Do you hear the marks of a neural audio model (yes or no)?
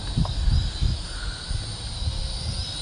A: no